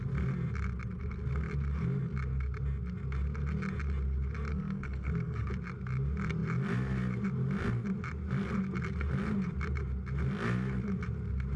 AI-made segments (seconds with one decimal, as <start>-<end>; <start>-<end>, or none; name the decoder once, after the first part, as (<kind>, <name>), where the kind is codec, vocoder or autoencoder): 4.5-5.5 (codec, SNAC)

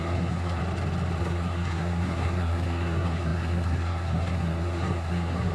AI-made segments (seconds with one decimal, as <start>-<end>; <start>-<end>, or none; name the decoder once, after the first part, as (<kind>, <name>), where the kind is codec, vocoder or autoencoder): 0.0-0.6 (codec, SNAC); 1.2-5.5

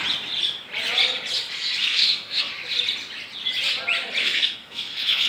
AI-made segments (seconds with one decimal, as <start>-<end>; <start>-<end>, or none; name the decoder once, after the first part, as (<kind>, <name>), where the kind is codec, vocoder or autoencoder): 1.8-2.5 (codec, SNAC); 4.2-5.3

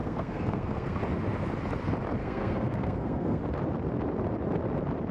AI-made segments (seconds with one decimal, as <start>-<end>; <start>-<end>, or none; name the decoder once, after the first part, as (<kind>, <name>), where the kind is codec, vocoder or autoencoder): 0.0-1.0 (codec, SNAC); 2.2-3.4

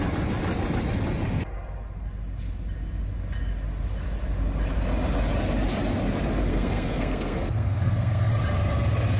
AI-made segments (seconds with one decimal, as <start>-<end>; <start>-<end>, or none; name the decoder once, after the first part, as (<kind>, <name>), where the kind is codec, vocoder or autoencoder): 6.5-8.3 (codec, SNAC)

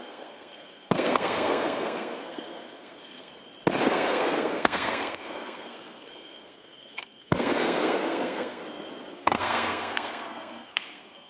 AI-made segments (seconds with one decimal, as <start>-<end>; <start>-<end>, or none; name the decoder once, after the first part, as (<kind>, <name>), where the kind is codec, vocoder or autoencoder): 0.0-3.3 (codec, SNAC); 3.8-8.6; 9.1-11.3